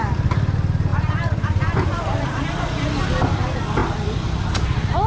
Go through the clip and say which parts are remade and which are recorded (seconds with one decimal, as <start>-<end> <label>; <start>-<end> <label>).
0.0-0.9 recorded; 0.9-3.0 remade; 3.0-5.1 recorded